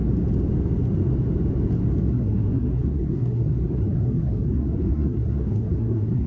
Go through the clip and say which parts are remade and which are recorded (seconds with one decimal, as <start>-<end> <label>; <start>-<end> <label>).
0.0-2.1 recorded; 2.1-6.3 remade